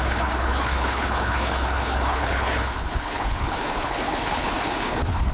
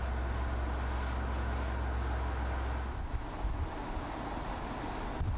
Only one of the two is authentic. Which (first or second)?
second